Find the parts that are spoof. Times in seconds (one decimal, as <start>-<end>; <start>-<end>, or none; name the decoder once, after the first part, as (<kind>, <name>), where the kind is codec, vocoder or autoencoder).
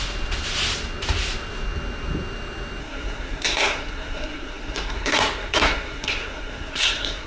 2.8-7.3 (codec, SNAC)